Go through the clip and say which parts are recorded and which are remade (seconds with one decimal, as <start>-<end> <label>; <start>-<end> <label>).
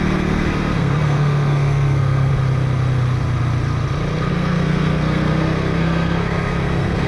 0.0-2.3 remade; 2.3-4.3 recorded; 4.3-7.1 remade